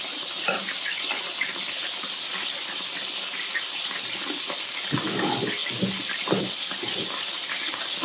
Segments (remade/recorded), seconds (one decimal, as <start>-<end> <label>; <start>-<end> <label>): 0.0-8.0 recorded